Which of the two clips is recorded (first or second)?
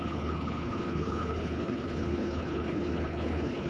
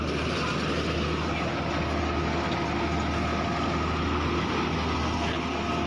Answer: second